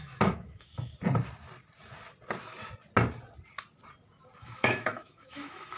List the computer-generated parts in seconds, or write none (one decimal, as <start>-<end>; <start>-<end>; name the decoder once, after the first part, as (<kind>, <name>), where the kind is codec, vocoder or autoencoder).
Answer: 0.0-0.9 (autoencoder, DAC-VAE); 4.4-5.8